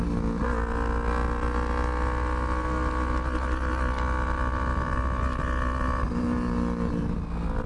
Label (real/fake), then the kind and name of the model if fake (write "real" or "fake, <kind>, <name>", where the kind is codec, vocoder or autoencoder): real